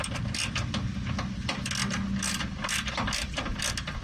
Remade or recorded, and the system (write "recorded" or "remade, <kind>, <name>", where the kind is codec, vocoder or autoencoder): recorded